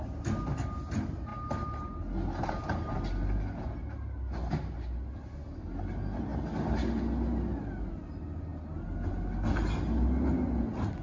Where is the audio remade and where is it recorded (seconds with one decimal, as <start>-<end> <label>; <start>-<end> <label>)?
0.0-11.0 recorded